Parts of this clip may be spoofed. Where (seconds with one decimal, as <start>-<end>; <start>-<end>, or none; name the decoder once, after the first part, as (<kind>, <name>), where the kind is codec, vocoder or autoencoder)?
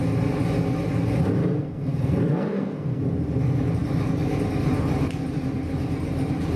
1.4-3.0 (codec, SNAC)